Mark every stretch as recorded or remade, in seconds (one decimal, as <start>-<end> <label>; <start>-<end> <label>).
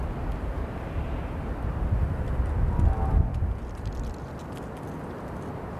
0.0-3.3 recorded; 3.3-4.3 remade; 4.3-5.8 recorded